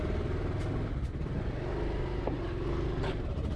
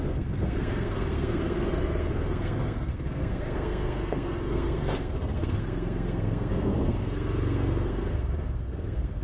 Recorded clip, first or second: first